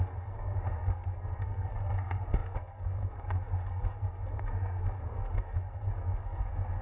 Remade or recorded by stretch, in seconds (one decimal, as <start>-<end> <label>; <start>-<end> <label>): 0.0-6.8 remade

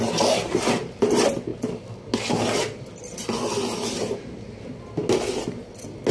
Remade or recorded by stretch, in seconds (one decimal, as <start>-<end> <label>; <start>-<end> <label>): 0.0-6.1 recorded

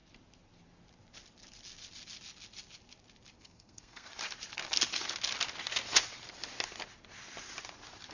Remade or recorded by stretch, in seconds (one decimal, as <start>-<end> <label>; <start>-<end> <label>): 0.0-3.4 recorded; 3.4-4.1 remade; 4.1-8.1 recorded

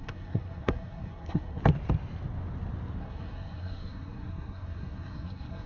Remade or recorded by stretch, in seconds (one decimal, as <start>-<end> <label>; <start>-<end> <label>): 0.0-1.6 remade; 1.6-3.0 recorded; 3.0-5.7 remade

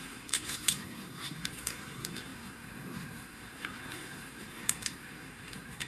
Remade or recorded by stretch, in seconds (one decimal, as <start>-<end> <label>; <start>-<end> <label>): 0.0-5.9 remade

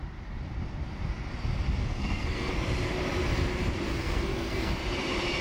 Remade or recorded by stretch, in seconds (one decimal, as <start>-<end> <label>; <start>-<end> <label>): 0.0-1.8 recorded; 1.8-2.5 remade; 2.5-4.0 recorded; 4.0-4.7 remade; 4.7-5.4 recorded